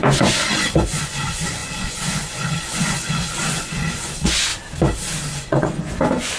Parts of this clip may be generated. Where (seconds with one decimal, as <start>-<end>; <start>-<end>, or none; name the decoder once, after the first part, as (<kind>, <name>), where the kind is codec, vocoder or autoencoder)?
0.0-4.5 (vocoder, Vocos); 5.3-6.4